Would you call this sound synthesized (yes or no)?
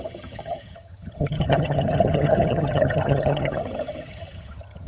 yes